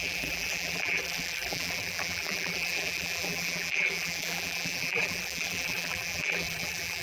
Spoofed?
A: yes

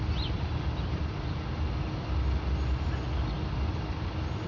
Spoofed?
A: no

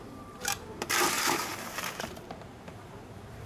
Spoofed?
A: yes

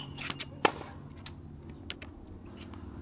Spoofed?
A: no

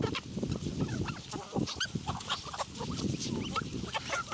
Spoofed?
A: no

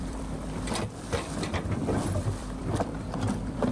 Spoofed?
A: yes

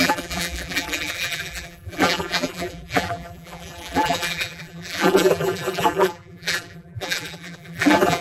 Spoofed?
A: yes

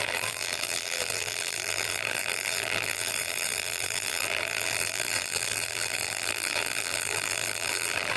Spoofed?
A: yes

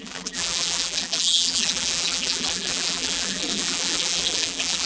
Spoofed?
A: yes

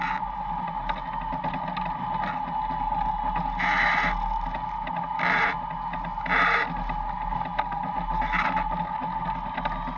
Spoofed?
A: no